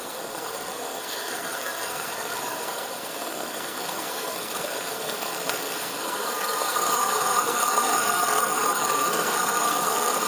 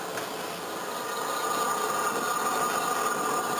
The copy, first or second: first